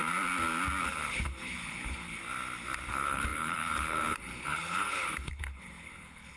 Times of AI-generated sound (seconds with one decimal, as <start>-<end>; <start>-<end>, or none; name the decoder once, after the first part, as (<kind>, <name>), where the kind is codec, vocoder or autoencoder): 0.8-2.2 (codec, HILCodec); 2.9-6.4